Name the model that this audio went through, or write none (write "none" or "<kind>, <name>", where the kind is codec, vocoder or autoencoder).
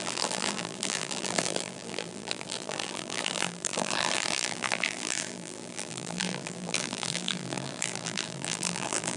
vocoder, BigVGAN v2